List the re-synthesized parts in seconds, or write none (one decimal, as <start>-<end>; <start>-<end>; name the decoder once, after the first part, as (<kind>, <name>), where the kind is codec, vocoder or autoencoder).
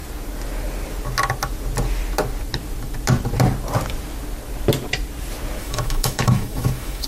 5.6-7.1 (autoencoder, DAC-VAE)